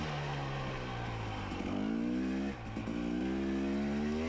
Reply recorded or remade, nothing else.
recorded